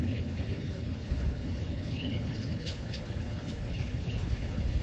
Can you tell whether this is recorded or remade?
remade